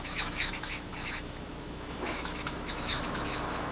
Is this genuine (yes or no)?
no